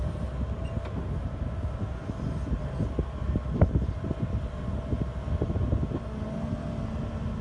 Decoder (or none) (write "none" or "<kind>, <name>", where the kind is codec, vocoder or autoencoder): none